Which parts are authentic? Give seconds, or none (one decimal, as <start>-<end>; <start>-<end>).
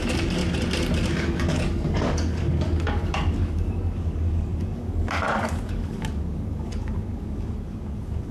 0.4-1.1